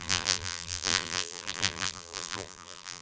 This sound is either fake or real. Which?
fake